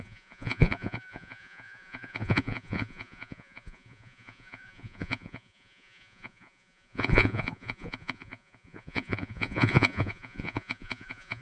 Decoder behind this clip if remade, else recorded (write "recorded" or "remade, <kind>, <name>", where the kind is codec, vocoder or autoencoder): remade, vocoder, Vocos